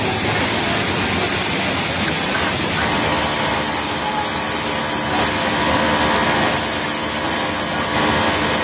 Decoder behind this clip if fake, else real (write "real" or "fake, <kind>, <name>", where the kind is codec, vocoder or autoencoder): real